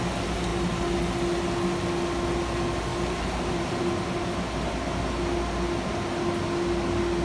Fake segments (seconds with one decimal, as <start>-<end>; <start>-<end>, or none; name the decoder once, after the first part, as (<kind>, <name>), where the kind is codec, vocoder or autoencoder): 2.9-3.8 (vocoder, BigVGAN v2)